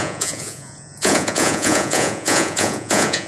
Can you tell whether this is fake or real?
fake